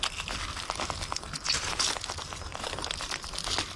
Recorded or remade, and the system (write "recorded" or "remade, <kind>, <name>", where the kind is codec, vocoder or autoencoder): recorded